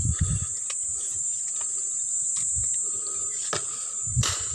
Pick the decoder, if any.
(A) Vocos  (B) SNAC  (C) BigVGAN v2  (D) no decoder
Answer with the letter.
D